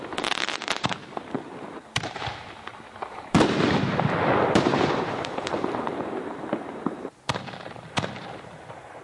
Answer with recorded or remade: remade